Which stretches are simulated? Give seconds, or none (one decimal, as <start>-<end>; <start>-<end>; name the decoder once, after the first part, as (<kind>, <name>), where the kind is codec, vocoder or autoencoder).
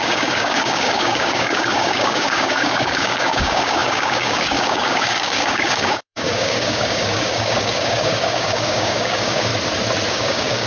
0.0-9.5 (codec, DAC); 10.1-10.7